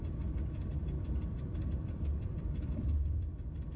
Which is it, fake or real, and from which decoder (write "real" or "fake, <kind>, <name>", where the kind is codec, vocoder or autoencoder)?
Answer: fake, vocoder, BigVGAN v2